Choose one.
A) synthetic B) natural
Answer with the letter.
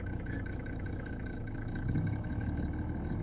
A